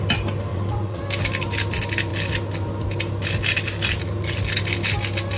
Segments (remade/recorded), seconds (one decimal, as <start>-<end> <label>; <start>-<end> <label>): 0.0-0.5 recorded; 0.5-1.0 remade; 1.0-5.4 recorded